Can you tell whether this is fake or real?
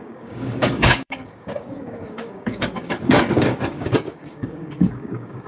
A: fake